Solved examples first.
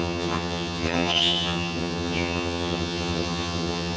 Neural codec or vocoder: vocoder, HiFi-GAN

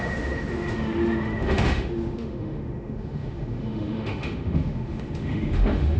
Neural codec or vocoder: autoencoder, DAC-VAE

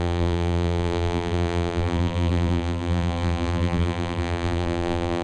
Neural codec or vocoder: vocoder, BigVGAN v2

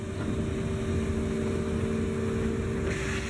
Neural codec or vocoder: none